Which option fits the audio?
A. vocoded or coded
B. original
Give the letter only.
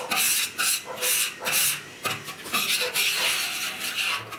B